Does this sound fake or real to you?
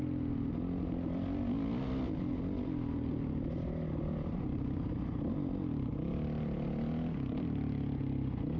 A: real